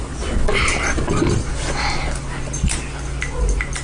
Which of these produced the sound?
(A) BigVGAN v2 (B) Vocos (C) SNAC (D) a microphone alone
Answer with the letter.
D